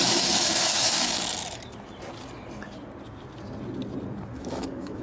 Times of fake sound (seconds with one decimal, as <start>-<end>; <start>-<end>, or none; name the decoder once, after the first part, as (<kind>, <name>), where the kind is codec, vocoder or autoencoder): 0.0-1.4 (codec, DAC); 4.4-5.0